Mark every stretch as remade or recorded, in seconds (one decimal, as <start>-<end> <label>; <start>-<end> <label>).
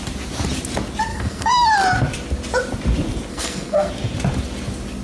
0.0-1.1 recorded; 1.1-1.7 remade; 1.7-3.3 recorded; 3.3-3.9 remade; 3.9-5.0 recorded